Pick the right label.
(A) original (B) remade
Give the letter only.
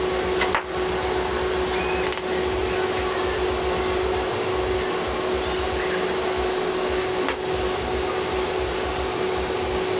A